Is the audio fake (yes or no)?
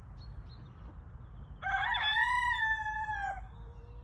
no